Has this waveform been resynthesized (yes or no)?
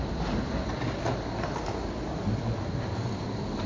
no